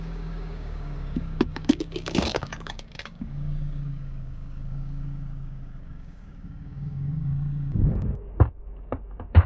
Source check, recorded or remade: remade